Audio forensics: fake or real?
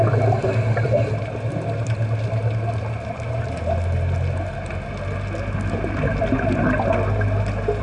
real